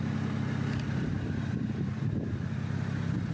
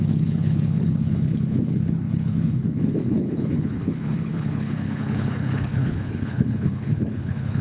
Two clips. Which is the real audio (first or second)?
first